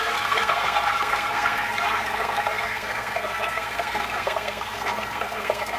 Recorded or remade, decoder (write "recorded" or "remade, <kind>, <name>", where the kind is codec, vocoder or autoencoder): remade, codec, SNAC